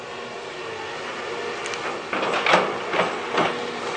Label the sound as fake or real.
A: real